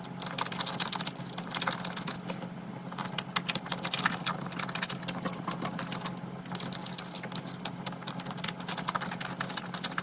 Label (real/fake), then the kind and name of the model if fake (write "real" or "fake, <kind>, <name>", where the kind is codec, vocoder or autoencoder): real